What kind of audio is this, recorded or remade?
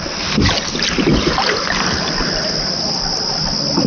recorded